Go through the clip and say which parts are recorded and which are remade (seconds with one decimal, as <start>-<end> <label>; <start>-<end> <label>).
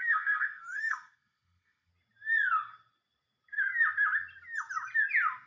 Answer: 0.0-1.9 remade; 1.9-5.5 recorded